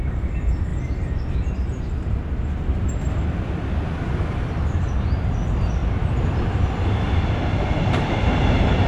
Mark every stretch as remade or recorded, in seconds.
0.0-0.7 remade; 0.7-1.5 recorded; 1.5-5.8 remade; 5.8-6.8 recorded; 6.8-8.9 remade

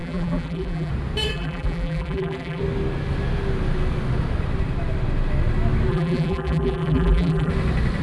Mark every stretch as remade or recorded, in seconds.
0.0-0.9 remade; 0.9-1.3 recorded; 1.3-2.6 remade; 2.6-5.9 recorded; 5.9-7.5 remade; 7.5-8.0 recorded

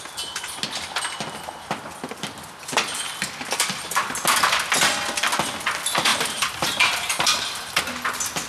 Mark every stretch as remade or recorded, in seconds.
0.0-6.1 recorded; 6.1-7.8 remade; 7.8-8.5 recorded